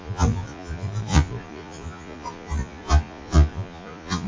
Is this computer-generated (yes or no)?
yes